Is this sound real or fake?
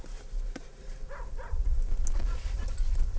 real